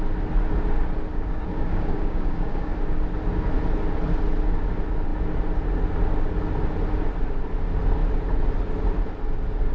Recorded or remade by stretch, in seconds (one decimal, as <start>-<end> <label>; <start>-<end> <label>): 0.0-1.1 recorded; 1.1-2.7 remade; 2.7-9.7 recorded